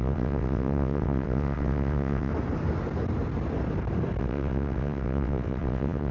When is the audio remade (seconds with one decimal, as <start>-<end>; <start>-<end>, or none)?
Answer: 0.0-2.3; 4.2-6.1